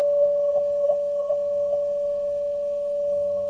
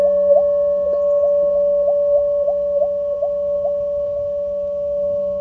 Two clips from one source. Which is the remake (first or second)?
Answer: first